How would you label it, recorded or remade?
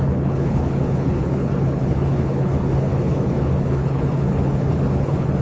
remade